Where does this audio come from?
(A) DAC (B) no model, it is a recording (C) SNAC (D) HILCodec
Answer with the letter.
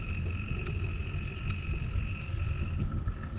B